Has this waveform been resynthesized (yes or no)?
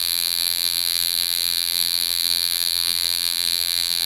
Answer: yes